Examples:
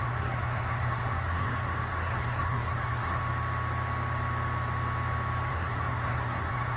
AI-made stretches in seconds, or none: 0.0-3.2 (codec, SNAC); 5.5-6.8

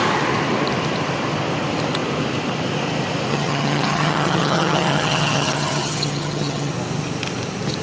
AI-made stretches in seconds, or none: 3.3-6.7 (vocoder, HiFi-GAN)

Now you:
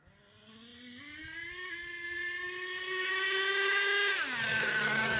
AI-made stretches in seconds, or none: none

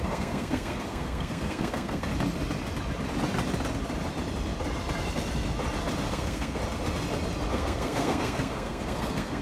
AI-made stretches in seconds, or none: 0.0-2.1 (codec, SNAC); 6.1-6.6; 7.5-9.4

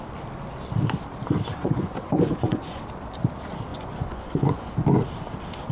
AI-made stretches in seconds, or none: 1.6-2.8 (vocoder, Vocos); 3.7-4.7

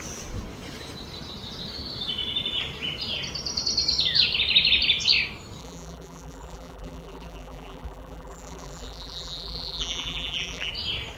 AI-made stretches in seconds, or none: 5.6-10.7 (vocoder, BigVGAN v2)